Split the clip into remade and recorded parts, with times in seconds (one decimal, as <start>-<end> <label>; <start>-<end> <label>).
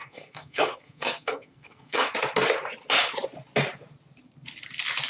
0.0-2.1 remade; 2.1-5.1 recorded